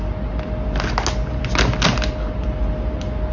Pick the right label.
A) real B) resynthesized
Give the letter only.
A